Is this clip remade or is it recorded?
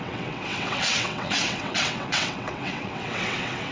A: remade